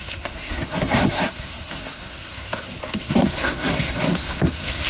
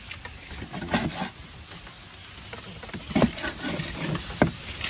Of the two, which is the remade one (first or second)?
first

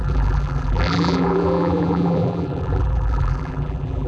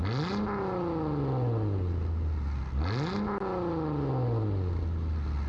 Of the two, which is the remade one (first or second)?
first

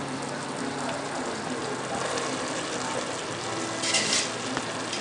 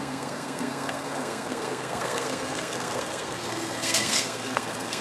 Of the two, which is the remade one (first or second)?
second